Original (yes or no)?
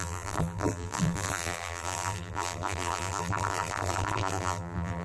no